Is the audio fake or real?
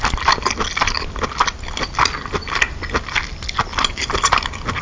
real